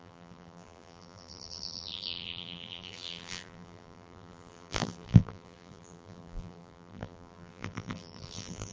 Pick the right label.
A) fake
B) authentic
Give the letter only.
A